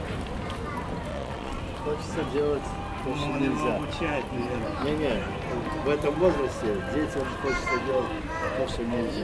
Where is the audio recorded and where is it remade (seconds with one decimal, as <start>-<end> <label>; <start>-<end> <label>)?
0.0-1.1 recorded; 1.1-1.6 remade; 1.6-9.2 recorded